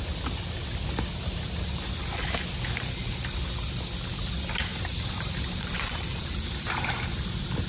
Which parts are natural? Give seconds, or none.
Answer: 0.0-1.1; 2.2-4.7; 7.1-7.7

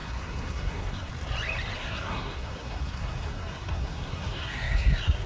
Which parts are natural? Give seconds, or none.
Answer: 1.1-1.8

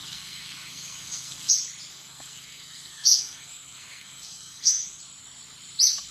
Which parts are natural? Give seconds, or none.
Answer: 1.5-1.9; 5.0-6.1

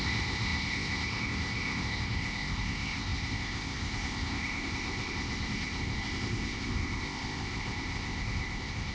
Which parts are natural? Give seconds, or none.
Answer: none

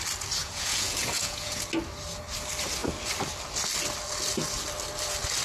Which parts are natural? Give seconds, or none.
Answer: 0.0-0.4; 1.6-5.4

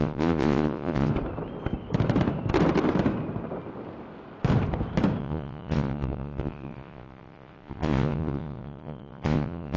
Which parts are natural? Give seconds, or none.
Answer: 1.1-5.2

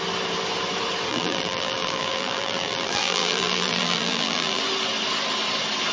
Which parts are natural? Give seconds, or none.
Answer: 0.0-1.1; 4.6-5.9

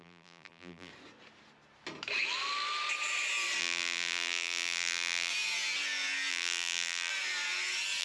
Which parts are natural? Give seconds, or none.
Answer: 0.9-3.6; 5.3-6.3; 7.1-8.0